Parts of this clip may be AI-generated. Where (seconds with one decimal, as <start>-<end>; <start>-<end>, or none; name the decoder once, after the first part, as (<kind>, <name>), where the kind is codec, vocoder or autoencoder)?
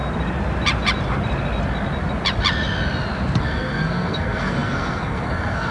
3.4-5.7 (codec, SNAC)